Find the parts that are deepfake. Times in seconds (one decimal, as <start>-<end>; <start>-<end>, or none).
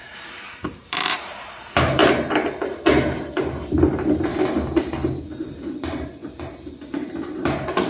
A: 0.0-2.0; 2.6-4.3; 5.2-6.2; 6.9-7.9